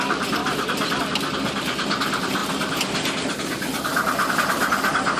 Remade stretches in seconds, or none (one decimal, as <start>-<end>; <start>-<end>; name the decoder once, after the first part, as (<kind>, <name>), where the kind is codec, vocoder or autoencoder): none